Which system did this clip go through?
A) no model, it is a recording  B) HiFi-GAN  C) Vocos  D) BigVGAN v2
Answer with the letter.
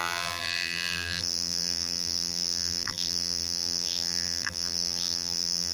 D